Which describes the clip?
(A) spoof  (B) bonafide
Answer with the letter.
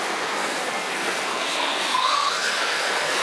A